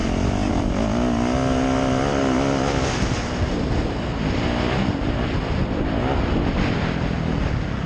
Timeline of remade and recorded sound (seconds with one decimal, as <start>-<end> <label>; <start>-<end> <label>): 0.0-7.9 recorded